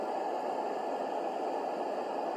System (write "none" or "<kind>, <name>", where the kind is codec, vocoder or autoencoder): none